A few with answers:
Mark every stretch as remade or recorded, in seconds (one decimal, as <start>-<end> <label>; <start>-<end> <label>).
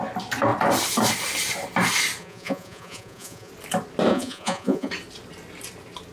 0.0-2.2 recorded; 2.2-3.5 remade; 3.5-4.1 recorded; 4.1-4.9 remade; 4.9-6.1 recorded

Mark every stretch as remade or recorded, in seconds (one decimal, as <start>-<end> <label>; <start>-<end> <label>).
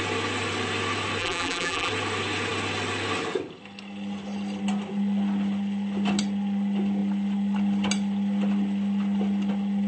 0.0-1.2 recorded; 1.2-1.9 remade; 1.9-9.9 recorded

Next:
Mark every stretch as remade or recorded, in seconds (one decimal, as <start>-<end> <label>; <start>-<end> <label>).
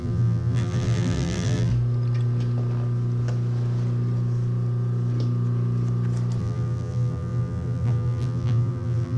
0.0-1.7 remade; 1.7-6.4 recorded; 6.4-9.2 remade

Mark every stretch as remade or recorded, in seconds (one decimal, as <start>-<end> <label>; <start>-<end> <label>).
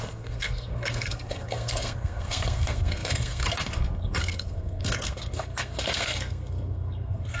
0.0-7.4 remade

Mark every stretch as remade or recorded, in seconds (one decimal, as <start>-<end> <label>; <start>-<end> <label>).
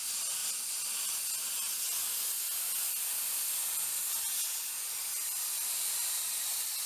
0.0-6.9 recorded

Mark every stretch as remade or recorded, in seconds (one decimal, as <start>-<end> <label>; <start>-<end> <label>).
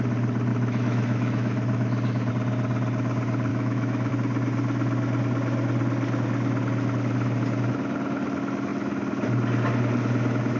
0.0-0.5 recorded; 0.5-2.3 remade; 2.3-3.5 recorded; 3.5-4.1 remade; 4.1-10.6 recorded